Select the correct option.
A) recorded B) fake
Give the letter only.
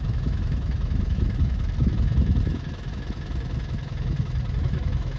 B